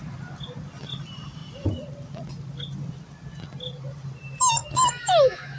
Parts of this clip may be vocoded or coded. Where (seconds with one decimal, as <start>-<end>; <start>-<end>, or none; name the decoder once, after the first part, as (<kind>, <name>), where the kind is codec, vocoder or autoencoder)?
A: 4.6-5.6 (autoencoder, DAC-VAE)